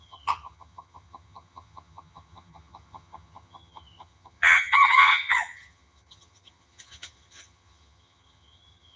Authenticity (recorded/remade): remade